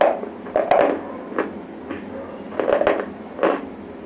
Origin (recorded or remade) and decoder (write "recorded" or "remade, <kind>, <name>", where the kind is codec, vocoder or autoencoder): recorded